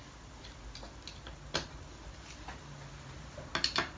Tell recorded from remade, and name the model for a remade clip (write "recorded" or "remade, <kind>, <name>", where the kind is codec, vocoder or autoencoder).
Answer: recorded